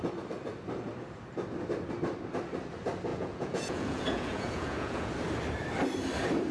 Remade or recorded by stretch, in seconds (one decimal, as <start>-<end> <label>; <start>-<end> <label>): 0.0-3.1 recorded; 3.1-5.1 remade; 5.1-6.5 recorded